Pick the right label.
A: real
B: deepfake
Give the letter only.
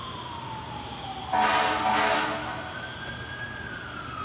A